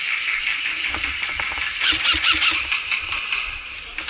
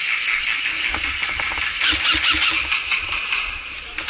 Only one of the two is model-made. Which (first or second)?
first